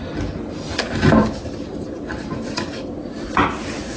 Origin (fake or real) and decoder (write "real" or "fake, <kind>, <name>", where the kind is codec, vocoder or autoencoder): real